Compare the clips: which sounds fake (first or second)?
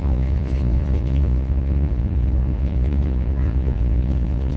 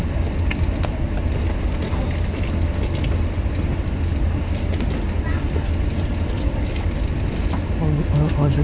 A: first